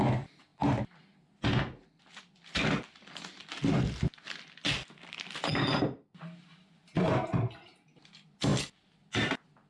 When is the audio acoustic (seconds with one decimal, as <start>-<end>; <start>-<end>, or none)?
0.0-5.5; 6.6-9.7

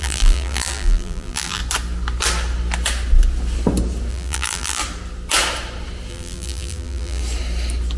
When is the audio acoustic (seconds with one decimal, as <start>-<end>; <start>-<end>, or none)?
1.6-4.1; 4.8-6.1; 7.2-8.0

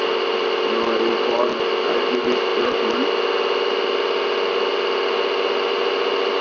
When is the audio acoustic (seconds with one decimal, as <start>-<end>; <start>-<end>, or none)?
0.0-6.4

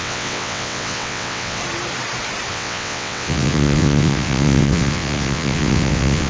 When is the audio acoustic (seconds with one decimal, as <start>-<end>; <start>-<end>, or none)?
1.6-2.5